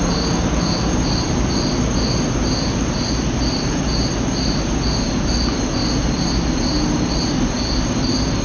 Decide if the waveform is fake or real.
real